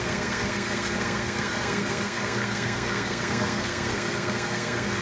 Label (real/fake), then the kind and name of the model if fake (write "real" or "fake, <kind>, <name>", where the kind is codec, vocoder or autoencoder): fake, codec, SNAC